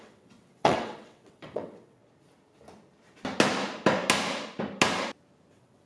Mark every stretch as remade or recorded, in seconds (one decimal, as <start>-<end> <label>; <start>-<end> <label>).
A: 0.0-2.0 remade; 2.0-5.5 recorded; 5.5-5.9 remade